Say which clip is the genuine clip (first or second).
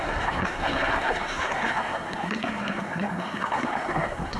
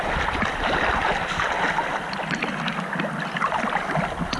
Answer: second